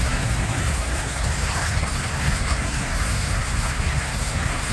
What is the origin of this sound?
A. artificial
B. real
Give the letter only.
A